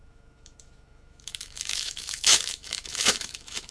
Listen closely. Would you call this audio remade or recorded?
remade